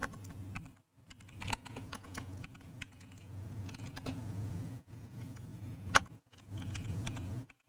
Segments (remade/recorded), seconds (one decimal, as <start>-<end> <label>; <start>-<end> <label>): 0.0-1.5 recorded; 1.5-7.7 remade